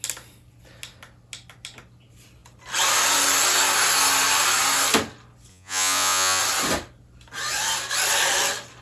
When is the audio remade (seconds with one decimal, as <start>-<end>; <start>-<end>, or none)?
5.5-6.4